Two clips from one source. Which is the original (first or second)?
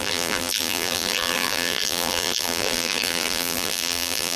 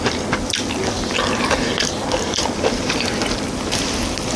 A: second